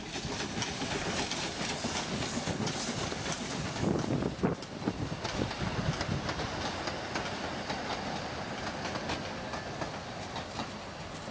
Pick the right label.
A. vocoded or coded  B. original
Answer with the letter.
B